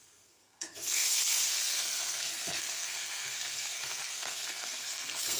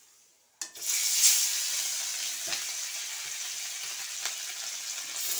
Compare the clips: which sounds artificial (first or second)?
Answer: first